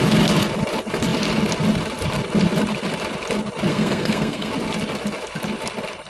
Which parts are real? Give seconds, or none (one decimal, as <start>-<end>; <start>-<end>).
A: 0.0-3.7; 4.5-6.1